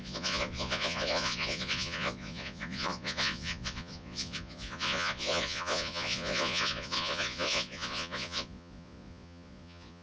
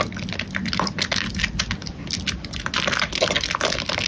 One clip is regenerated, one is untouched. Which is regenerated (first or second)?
first